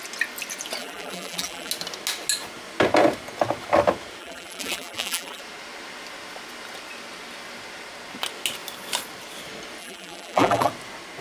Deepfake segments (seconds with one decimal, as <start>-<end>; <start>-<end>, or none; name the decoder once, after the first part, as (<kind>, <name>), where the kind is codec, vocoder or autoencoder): 0.8-1.7 (vocoder, BigVGAN v2); 4.2-5.4; 9.8-10.7